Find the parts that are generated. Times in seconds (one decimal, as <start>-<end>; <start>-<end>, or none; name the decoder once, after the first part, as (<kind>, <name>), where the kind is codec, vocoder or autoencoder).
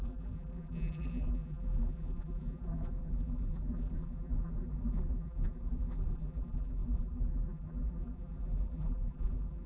0.0-9.7 (vocoder, BigVGAN v2)